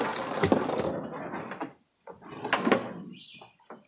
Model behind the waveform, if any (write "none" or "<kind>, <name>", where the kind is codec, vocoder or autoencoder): none